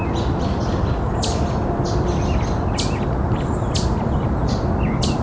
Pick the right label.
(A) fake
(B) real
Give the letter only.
B